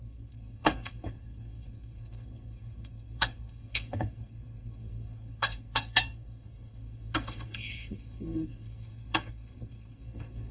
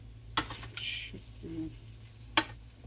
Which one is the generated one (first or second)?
first